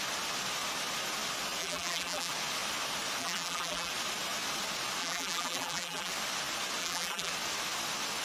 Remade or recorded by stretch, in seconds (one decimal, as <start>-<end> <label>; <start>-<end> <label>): 0.0-1.6 recorded; 1.6-2.3 remade; 2.3-3.2 recorded; 3.2-3.9 remade; 3.9-5.0 recorded; 5.0-6.1 remade; 6.1-6.8 recorded; 6.8-7.3 remade; 7.3-8.2 recorded